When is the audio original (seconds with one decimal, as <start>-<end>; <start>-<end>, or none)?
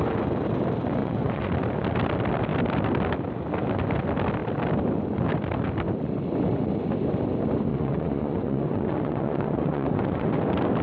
0.0-1.0; 1.5-7.7; 10.3-10.8